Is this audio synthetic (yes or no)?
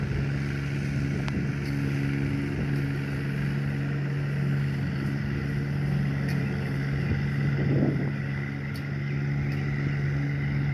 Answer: no